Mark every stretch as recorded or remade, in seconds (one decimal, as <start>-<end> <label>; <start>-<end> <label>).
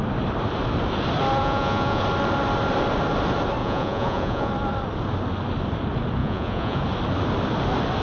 0.0-1.4 recorded; 1.4-2.0 remade; 2.0-3.6 recorded; 3.6-4.5 remade; 4.5-6.2 recorded; 6.2-6.8 remade; 6.8-8.0 recorded